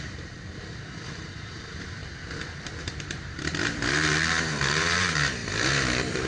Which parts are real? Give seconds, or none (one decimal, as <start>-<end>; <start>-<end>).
2.0-2.8